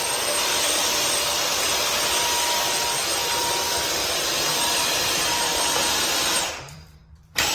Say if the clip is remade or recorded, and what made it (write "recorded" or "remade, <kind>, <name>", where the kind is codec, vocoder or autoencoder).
remade, vocoder, BigVGAN v2